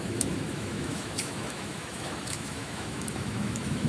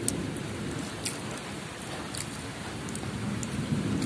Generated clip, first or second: first